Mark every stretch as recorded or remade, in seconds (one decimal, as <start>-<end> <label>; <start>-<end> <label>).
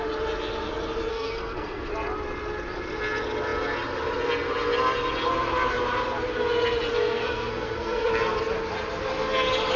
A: 0.0-1.1 recorded; 1.1-1.9 remade; 1.9-6.9 recorded; 6.9-8.1 remade; 8.1-9.8 recorded